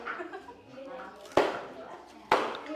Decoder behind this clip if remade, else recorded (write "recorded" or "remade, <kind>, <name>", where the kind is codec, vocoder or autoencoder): recorded